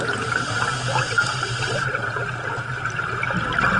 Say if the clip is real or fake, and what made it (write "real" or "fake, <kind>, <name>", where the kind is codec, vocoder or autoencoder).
real